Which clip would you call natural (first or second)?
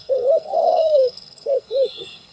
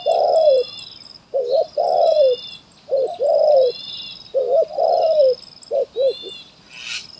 second